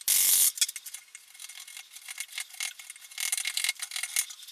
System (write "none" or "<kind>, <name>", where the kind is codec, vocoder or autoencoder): none